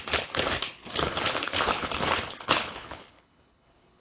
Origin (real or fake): fake